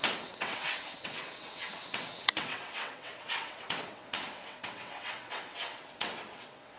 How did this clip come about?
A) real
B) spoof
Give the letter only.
B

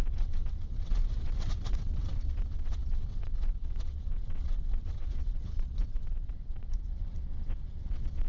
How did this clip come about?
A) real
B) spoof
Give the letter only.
B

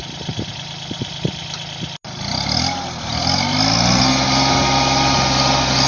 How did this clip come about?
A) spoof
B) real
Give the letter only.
B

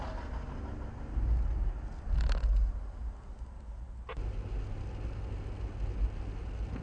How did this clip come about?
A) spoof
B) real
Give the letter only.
B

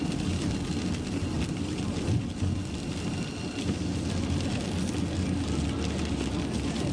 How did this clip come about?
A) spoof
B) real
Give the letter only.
B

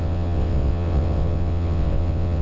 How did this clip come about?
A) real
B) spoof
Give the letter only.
B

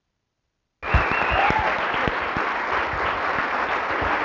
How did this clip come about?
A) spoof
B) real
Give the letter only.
B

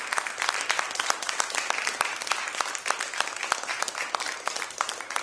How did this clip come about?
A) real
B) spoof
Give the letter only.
A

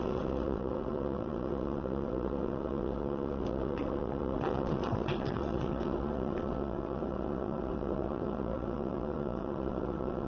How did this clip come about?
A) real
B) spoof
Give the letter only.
B